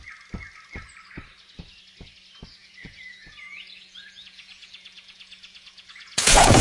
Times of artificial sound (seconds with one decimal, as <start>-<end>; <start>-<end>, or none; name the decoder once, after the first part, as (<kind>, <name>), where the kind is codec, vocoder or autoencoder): 2.6-6.6 (vocoder, Vocos)